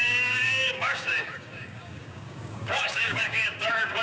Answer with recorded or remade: remade